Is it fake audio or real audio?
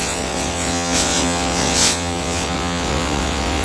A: fake